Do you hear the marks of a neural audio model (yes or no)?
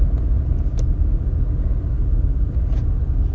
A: no